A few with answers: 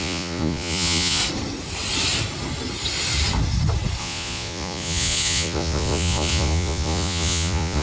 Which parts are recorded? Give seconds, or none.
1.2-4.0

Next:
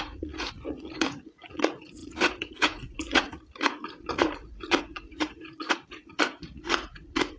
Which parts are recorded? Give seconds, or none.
none